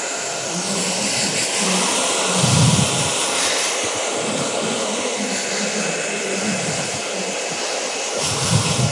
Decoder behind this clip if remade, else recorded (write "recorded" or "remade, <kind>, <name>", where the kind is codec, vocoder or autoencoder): recorded